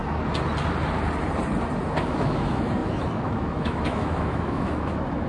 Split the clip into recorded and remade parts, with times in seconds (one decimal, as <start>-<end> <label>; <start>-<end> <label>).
0.0-2.0 recorded; 2.0-5.3 remade